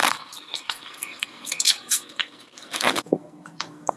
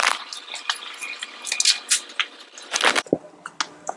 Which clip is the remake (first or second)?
first